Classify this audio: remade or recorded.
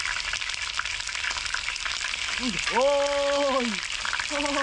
recorded